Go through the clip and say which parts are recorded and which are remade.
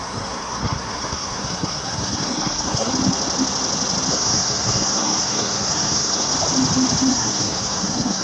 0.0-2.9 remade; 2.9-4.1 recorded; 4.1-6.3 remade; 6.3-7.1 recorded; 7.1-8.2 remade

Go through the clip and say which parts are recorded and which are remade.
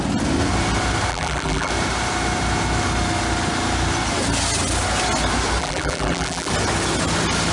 0.0-1.1 recorded; 1.1-1.7 remade; 1.7-5.6 recorded; 5.6-6.5 remade; 6.5-7.5 recorded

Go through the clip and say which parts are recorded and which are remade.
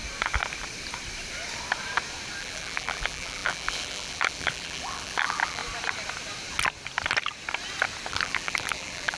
0.0-2.4 recorded; 2.4-5.6 remade; 5.6-8.1 recorded; 8.1-9.2 remade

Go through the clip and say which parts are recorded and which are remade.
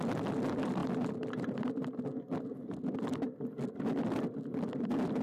0.0-5.2 recorded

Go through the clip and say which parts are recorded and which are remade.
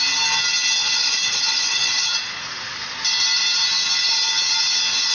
0.0-0.8 recorded; 0.8-2.6 remade; 2.6-5.1 recorded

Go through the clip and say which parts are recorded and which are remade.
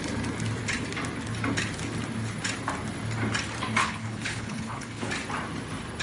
0.0-3.8 recorded; 3.8-5.1 remade; 5.1-6.0 recorded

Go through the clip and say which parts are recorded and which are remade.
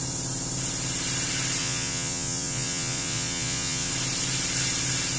0.0-1.6 recorded; 1.6-3.9 remade; 3.9-5.2 recorded